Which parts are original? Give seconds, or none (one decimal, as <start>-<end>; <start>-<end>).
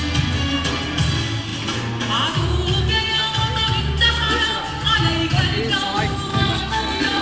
0.0-6.3